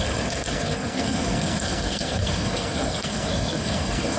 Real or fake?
fake